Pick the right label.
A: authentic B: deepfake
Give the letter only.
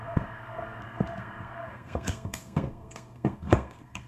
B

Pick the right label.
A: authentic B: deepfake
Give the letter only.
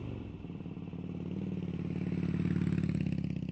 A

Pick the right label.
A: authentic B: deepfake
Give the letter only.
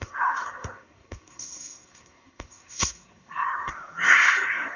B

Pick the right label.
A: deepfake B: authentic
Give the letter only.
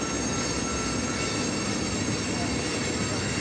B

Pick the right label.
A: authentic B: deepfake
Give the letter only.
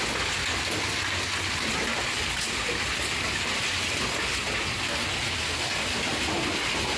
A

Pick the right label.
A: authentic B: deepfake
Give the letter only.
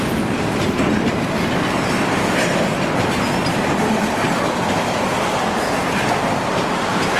A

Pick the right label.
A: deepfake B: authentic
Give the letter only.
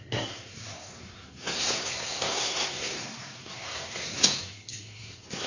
A